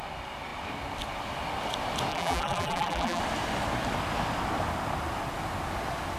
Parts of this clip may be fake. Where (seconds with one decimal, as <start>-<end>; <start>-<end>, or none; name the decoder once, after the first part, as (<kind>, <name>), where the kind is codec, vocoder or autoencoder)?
2.1-3.2 (vocoder, BigVGAN v2)